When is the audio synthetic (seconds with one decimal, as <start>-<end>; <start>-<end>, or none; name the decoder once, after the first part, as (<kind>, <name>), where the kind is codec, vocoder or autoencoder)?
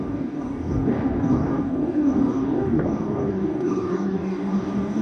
0.0-5.0 (codec, DAC)